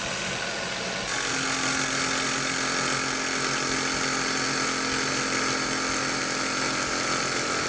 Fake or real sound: real